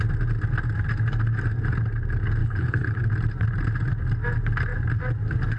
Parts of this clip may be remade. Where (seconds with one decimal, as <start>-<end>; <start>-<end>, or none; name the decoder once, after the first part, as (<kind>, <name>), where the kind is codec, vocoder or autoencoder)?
2.4-3.0 (codec, HILCodec)

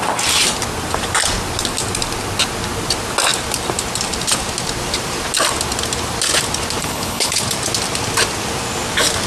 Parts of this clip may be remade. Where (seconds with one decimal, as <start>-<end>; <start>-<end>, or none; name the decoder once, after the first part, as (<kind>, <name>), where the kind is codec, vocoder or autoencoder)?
6.8-7.4 (codec, HILCodec)